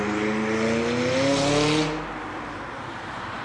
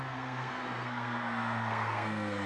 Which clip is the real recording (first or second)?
first